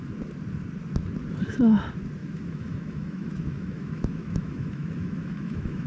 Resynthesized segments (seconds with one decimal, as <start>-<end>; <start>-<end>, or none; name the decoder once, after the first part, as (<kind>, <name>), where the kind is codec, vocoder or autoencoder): 2.2-5.9 (autoencoder, DAC-VAE)